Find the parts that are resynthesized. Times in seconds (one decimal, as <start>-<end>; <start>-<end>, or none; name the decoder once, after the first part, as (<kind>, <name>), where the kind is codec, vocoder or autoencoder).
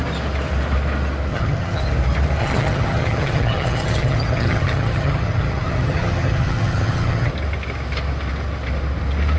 1.3-1.8 (vocoder, HiFi-GAN); 2.4-7.3